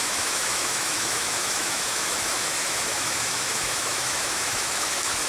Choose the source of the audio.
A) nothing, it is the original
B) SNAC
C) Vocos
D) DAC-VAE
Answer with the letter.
D